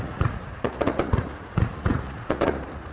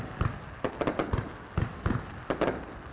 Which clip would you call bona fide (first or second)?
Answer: second